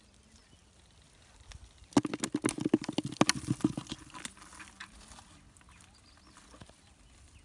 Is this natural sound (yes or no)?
yes